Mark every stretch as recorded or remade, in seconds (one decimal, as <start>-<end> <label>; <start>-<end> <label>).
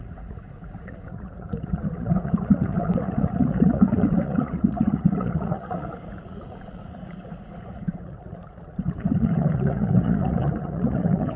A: 0.0-11.4 remade